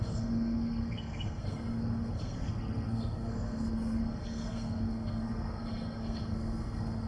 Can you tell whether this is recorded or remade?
remade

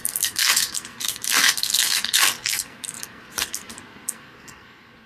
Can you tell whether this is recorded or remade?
remade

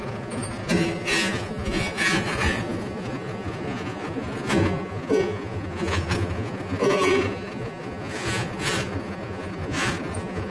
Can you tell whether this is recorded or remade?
remade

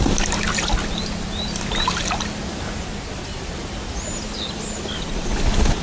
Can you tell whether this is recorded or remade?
recorded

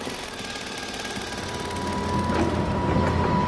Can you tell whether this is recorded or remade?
recorded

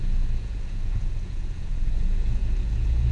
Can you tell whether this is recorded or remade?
remade